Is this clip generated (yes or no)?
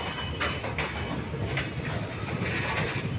no